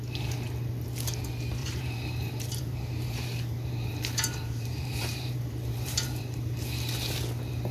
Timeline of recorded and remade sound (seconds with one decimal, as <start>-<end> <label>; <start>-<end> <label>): 0.0-1.6 recorded; 1.6-6.2 remade; 6.2-7.7 recorded